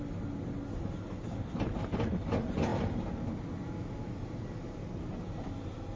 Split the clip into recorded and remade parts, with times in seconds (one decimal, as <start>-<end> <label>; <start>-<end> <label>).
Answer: 0.0-6.0 recorded